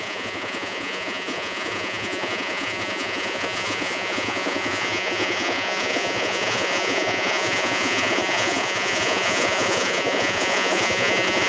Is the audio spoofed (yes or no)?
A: yes